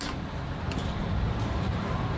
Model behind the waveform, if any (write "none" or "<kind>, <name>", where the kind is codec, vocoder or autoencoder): none